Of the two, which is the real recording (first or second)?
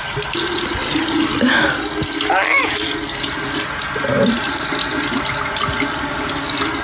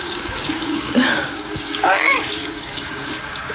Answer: first